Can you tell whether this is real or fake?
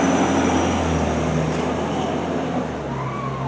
real